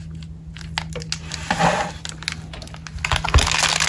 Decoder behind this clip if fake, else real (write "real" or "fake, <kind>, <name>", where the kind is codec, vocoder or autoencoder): real